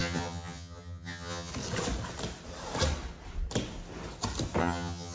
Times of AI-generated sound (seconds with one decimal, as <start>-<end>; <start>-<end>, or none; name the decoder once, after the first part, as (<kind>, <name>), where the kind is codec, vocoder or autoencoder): 0.0-1.5 (vocoder, HiFi-GAN); 4.6-5.1